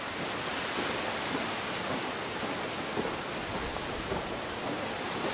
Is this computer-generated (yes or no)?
no